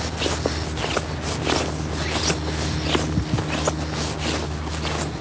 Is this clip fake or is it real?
real